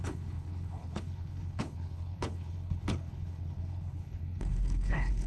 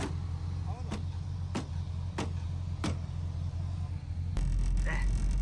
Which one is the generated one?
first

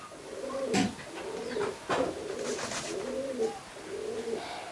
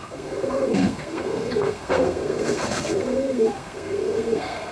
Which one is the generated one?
second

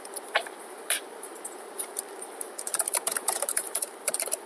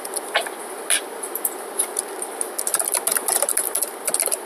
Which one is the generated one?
first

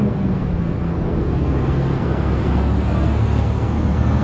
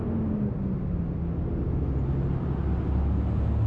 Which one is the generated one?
first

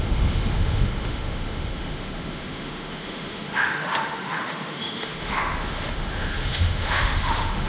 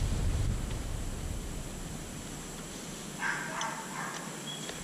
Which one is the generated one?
first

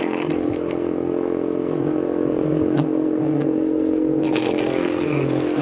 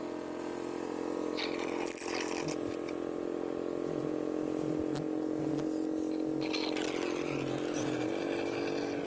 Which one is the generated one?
first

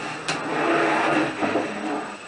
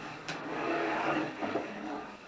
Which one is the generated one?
second